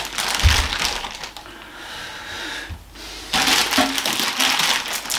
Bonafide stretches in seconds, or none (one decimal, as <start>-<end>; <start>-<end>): 0.0-5.2